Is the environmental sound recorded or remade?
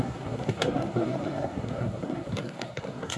remade